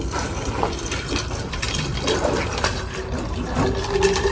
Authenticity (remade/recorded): recorded